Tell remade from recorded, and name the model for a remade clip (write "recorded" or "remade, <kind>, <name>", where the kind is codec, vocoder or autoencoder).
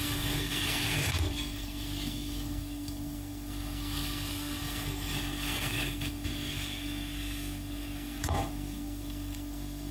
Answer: remade, codec, SNAC